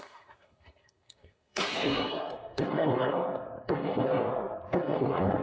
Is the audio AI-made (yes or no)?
yes